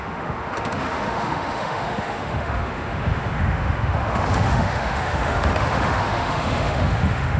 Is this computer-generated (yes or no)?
yes